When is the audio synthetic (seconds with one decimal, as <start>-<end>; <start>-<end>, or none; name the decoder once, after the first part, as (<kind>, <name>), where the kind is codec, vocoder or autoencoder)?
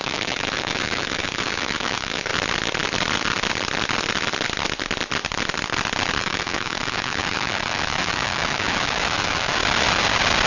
0.0-2.3 (autoencoder, DAC-VAE); 6.2-9.6